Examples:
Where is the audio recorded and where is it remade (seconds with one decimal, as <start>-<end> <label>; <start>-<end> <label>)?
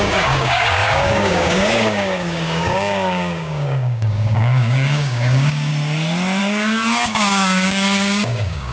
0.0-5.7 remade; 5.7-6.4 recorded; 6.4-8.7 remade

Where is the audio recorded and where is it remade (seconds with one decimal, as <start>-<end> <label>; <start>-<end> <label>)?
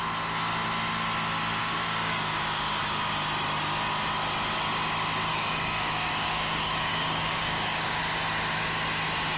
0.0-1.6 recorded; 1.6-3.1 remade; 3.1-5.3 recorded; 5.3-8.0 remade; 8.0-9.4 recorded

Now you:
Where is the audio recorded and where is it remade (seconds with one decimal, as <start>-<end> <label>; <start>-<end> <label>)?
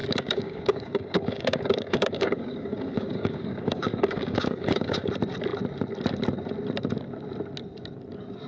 0.0-5.1 remade; 5.1-8.5 recorded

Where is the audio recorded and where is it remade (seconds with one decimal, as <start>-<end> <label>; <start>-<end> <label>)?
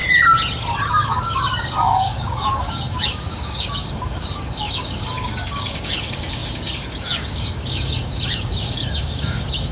0.0-0.9 recorded; 0.9-9.7 remade